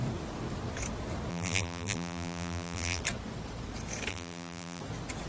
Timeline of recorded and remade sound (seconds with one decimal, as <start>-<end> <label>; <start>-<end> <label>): 0.0-1.3 recorded; 1.3-3.0 remade; 3.0-4.1 recorded; 4.1-4.8 remade; 4.8-5.3 recorded